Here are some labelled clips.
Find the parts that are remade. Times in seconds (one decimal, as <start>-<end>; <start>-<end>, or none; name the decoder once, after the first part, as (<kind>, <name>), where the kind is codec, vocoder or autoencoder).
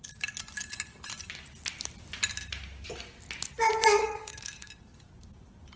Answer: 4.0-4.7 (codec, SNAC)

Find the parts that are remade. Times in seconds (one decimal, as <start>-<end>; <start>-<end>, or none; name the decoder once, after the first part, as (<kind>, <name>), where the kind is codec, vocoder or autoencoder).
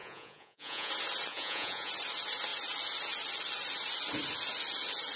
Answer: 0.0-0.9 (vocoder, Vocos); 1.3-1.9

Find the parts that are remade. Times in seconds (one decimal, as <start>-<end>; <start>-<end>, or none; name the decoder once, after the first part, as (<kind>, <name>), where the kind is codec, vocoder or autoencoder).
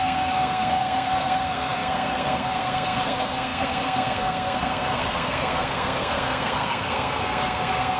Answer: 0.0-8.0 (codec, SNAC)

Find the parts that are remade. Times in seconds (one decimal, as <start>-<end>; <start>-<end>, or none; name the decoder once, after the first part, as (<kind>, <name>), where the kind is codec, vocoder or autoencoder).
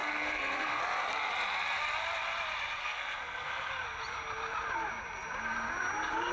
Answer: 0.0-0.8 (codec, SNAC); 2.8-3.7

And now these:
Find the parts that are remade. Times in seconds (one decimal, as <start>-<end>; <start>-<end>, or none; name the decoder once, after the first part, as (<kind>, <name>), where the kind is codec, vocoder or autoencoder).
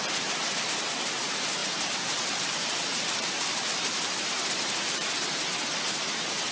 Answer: 1.6-5.1 (vocoder, BigVGAN v2)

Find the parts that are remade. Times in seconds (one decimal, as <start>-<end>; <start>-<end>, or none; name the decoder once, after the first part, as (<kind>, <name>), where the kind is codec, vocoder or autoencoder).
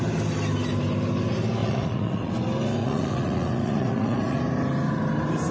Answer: 1.6-2.3 (vocoder, Vocos); 2.8-4.4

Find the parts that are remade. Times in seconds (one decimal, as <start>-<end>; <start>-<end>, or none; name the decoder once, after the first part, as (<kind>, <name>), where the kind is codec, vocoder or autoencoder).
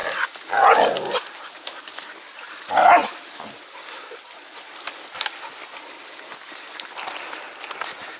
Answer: none